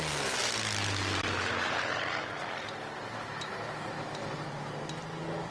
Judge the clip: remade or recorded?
recorded